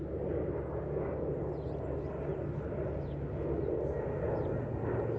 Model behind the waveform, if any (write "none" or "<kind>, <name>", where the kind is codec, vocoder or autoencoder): none